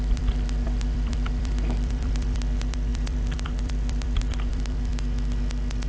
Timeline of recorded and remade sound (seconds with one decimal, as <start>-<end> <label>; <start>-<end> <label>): 0.0-4.9 remade; 4.9-5.9 recorded